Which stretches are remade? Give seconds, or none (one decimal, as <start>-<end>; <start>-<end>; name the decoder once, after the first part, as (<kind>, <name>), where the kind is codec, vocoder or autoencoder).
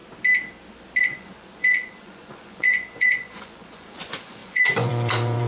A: 1.0-5.5 (vocoder, Vocos)